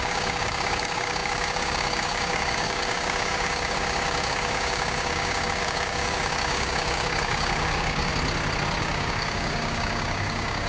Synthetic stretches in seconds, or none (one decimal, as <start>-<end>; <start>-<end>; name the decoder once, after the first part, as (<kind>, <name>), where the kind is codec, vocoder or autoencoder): 0.0-8.1 (codec, DAC); 8.8-10.7